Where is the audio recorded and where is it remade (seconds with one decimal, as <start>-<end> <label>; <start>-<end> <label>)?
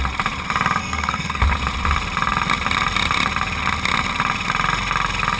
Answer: 0.0-0.8 recorded; 0.8-1.4 remade; 1.4-5.4 recorded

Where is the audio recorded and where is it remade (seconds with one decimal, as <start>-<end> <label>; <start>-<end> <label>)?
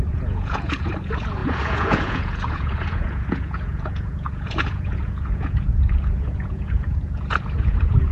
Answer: 0.0-8.1 remade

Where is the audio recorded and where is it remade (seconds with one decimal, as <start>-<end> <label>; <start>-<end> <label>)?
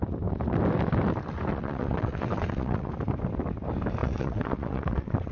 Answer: 0.0-1.5 recorded; 1.5-2.9 remade; 2.9-4.0 recorded; 4.0-5.3 remade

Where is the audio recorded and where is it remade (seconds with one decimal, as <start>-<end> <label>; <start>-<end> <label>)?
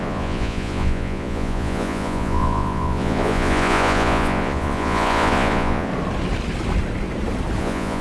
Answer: 0.0-5.9 remade; 5.9-7.6 recorded; 7.6-8.0 remade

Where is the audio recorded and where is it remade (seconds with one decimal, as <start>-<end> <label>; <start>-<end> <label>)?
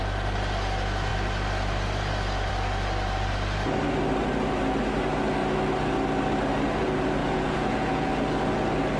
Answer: 0.0-7.2 recorded; 7.2-8.1 remade; 8.1-9.0 recorded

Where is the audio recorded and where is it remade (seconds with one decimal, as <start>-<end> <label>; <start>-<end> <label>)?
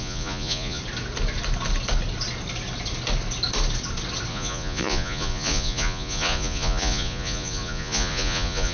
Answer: 0.0-0.8 remade; 0.8-4.3 recorded; 4.3-8.7 remade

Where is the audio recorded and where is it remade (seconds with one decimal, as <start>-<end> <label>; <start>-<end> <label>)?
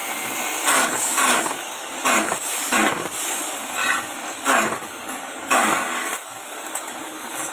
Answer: 0.0-0.7 recorded; 0.7-3.8 remade; 3.8-4.3 recorded; 4.3-7.5 remade